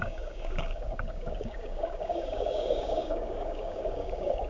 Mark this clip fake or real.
fake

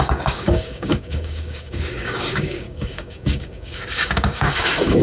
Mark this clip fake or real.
fake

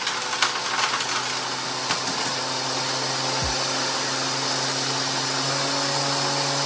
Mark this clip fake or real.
real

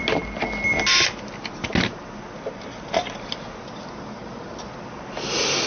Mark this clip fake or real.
real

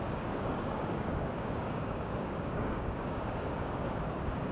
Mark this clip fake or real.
fake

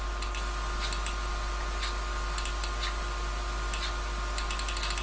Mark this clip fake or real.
real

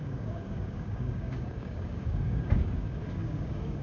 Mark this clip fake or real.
fake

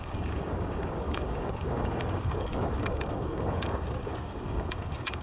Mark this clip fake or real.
fake